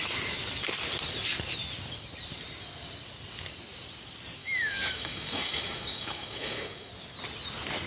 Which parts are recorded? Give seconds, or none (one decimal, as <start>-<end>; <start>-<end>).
0.0-4.4; 6.9-7.9